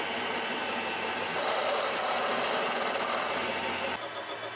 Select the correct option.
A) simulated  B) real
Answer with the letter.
B